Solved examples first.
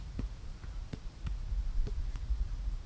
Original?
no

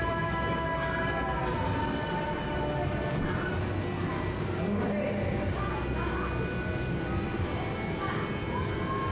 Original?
yes